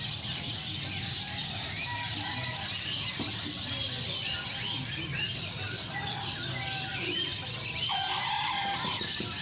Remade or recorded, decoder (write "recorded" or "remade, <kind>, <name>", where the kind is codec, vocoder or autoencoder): recorded